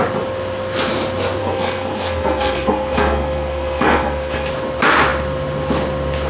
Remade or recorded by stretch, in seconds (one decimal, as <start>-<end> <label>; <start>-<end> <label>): 0.0-1.4 recorded; 1.4-4.5 remade; 4.5-6.3 recorded